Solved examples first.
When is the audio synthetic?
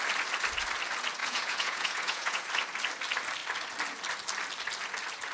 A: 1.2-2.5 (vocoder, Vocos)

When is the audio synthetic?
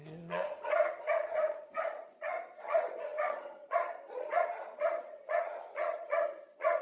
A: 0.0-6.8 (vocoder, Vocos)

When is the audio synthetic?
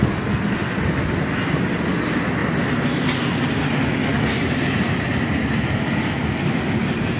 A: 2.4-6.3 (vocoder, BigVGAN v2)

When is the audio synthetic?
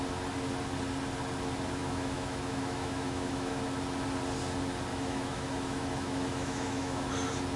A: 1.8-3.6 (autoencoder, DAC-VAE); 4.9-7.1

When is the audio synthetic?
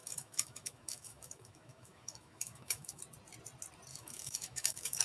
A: 0.0-3.0 (autoencoder, DAC-VAE); 3.9-5.0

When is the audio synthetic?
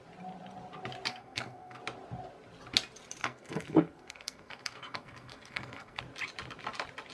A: 1.1-1.8 (codec, SNAC); 3.2-6.0